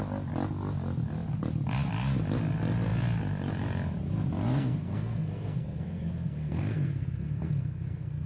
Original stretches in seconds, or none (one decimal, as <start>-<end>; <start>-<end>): 0.0-4.5